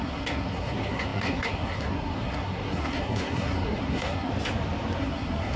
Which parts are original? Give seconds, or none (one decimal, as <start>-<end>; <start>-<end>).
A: 4.3-5.0